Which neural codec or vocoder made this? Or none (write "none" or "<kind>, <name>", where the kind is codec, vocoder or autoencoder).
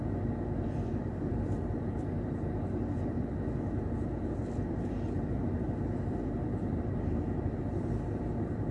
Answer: vocoder, BigVGAN v2